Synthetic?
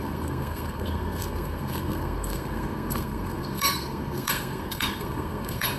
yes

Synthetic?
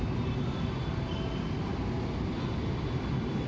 no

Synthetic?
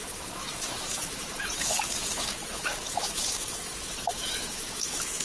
yes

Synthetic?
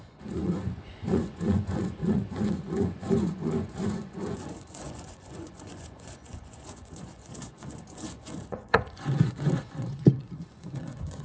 yes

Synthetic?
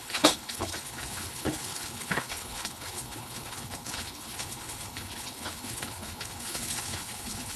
yes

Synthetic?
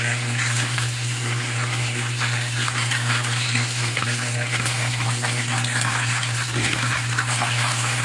yes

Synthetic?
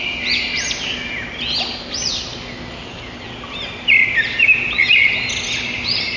no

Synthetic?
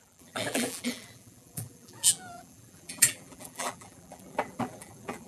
yes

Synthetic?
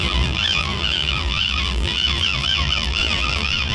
yes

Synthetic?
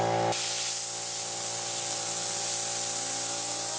no